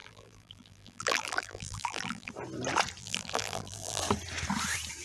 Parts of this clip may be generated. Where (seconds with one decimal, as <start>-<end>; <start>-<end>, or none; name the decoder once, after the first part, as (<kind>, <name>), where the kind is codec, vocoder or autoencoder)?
0.0-2.3 (vocoder, BigVGAN v2); 3.0-4.0